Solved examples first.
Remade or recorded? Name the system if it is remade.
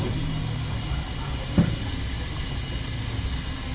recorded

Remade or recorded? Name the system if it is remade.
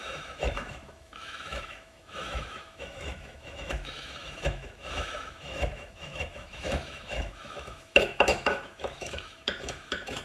remade, autoencoder, DAC-VAE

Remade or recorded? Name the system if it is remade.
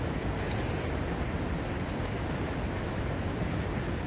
recorded